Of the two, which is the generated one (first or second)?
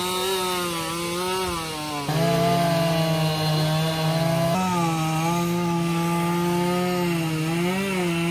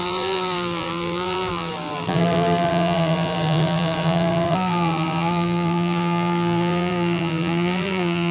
second